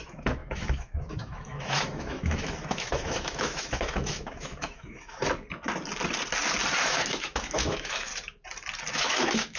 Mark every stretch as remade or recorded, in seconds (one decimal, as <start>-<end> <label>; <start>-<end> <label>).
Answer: 0.0-5.2 remade; 5.2-6.8 recorded; 6.8-8.1 remade; 8.1-8.9 recorded; 8.9-9.6 remade